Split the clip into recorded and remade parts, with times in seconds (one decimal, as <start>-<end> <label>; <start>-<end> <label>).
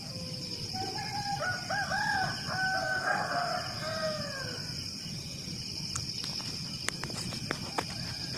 0.0-2.8 recorded; 2.8-3.5 remade; 3.5-8.4 recorded